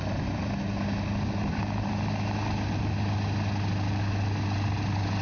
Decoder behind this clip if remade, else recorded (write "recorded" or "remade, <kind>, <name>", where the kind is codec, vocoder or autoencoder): recorded